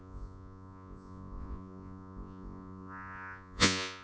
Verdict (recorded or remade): remade